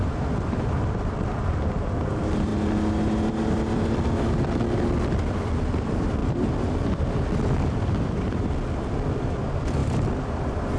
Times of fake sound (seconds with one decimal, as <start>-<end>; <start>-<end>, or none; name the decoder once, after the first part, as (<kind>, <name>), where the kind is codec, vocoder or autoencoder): 0.0-2.5 (vocoder, BigVGAN v2); 5.5-6.2; 8.0-10.8